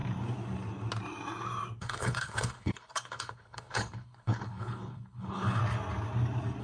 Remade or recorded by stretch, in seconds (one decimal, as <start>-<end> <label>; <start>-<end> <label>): 0.0-1.8 recorded; 1.8-5.6 remade; 5.6-6.6 recorded